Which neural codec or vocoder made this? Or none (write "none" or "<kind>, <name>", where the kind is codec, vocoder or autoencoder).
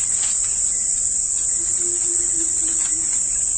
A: none